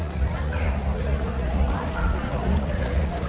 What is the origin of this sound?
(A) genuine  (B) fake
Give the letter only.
B